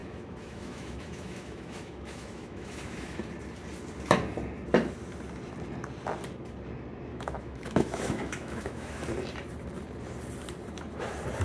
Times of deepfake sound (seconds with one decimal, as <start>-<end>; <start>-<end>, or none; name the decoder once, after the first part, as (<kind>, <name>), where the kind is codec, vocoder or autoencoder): 0.0-3.3 (autoencoder, DAC-VAE); 7.1-9.0